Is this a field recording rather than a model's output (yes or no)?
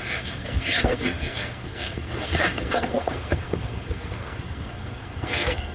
no